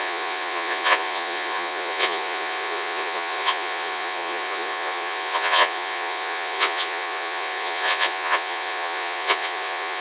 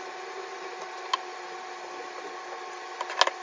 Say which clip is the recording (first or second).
second